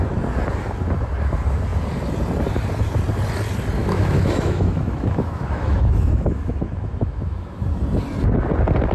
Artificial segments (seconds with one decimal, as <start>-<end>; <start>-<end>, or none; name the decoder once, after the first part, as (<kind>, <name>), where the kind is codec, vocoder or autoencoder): 3.8-7.8 (autoencoder, DAC-VAE)